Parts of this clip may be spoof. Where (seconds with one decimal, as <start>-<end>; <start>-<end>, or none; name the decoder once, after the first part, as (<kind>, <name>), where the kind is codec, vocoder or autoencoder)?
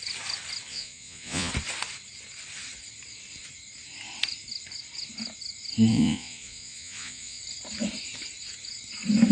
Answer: 0.7-1.5 (vocoder, Vocos); 5.9-7.4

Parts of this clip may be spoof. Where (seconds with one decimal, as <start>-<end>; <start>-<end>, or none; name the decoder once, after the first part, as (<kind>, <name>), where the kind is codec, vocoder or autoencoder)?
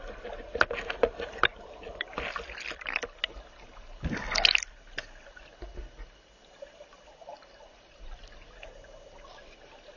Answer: none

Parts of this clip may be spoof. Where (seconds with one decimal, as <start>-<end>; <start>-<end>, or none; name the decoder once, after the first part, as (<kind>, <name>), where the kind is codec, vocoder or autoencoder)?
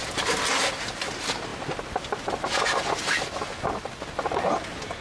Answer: none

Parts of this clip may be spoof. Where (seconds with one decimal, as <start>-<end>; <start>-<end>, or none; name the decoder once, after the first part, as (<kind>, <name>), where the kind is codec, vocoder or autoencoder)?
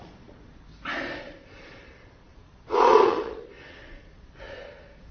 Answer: 0.0-0.7 (vocoder, Vocos); 1.2-5.1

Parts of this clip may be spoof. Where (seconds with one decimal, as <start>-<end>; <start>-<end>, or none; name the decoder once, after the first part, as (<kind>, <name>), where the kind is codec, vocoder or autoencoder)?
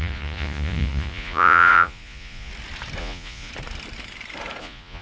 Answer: 0.0-2.5 (vocoder, Vocos); 3.0-3.5; 4.6-5.0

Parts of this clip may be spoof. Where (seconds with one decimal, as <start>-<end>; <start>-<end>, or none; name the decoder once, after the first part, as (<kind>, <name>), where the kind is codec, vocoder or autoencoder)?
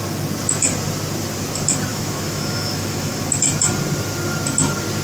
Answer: 1.9-3.3 (autoencoder, DAC-VAE)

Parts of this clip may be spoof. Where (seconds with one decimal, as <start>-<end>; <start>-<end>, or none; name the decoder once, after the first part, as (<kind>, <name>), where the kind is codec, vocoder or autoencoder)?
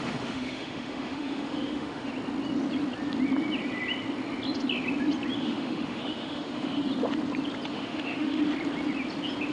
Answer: 0.0-2.1 (autoencoder, DAC-VAE); 5.4-6.8; 7.7-8.4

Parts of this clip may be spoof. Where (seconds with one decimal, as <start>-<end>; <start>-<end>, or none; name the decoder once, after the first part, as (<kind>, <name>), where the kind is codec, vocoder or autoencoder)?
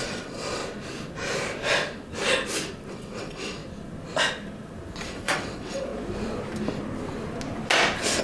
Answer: 0.0-0.6 (vocoder, WaveNeXt); 2.9-3.6; 5.1-5.9